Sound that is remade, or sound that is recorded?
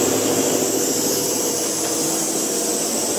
recorded